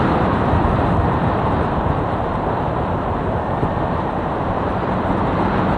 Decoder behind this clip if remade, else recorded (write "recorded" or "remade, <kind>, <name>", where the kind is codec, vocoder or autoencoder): remade, vocoder, BigVGAN v2